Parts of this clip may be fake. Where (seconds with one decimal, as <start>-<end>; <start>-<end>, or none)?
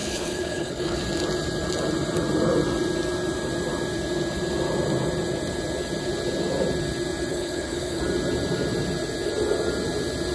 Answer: 0.0-1.0; 7.3-8.0